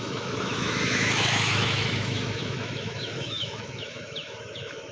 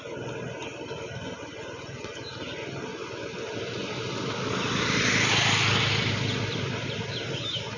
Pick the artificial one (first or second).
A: first